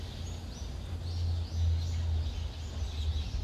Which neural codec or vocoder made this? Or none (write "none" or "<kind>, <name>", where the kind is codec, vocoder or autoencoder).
none